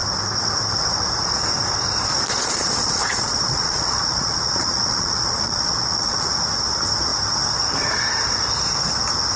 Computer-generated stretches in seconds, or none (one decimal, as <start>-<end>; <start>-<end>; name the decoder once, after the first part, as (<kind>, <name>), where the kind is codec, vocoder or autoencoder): 2.3-6.3 (vocoder, Vocos)